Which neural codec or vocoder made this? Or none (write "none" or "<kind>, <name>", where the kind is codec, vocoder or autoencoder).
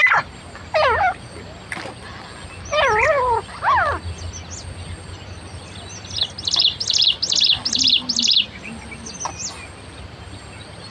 none